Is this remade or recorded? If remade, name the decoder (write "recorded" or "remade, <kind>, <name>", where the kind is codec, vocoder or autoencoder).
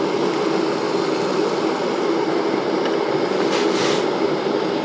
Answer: recorded